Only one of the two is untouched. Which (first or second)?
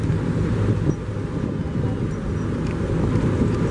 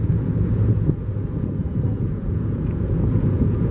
first